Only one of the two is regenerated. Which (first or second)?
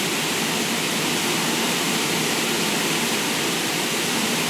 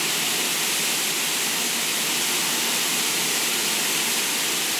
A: first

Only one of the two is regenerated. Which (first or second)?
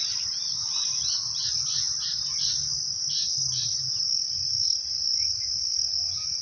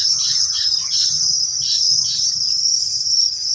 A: second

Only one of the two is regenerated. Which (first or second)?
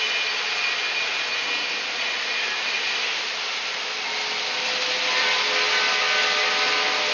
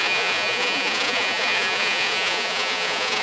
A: second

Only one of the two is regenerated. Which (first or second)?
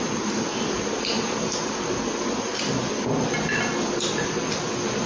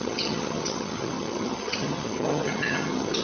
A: second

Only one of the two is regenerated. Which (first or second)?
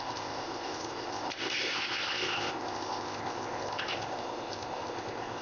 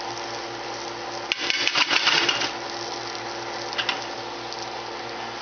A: first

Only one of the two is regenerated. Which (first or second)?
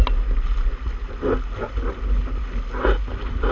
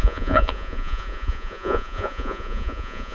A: second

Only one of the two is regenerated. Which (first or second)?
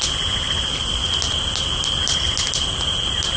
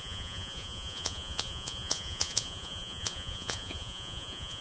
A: second